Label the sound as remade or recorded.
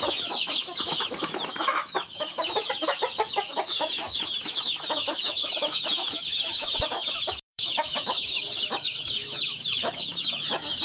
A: remade